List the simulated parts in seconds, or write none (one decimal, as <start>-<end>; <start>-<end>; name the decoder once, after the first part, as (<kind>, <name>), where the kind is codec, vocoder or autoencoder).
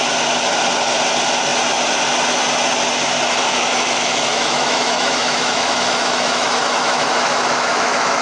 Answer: 3.4-8.2 (autoencoder, DAC-VAE)